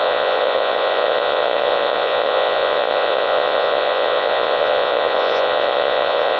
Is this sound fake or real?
fake